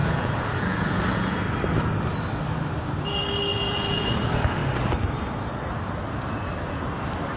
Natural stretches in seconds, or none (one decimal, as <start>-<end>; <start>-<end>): 1.4-3.5; 4.1-7.4